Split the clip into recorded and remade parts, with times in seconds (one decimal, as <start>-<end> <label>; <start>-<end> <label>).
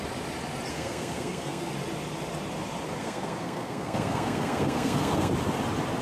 0.0-0.7 recorded; 0.7-1.7 remade; 1.7-3.0 recorded; 3.0-5.3 remade; 5.3-6.0 recorded